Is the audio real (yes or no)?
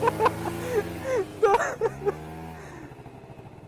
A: yes